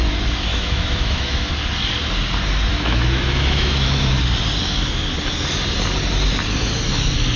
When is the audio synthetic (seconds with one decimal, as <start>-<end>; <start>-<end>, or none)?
0.5-1.5; 2.7-4.2